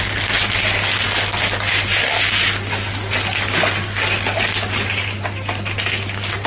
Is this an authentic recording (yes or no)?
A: no